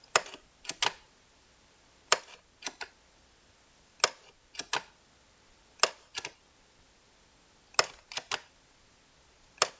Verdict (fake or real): real